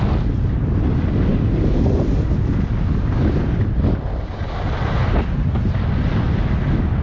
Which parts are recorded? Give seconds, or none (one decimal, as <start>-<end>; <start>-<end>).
0.0-7.0